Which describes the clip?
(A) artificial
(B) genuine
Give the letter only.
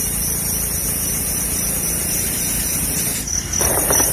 A